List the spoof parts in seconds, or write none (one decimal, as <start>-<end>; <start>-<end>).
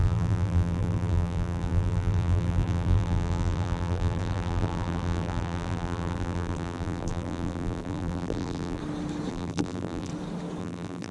0.0-8.8; 9.3-10.1; 10.6-11.1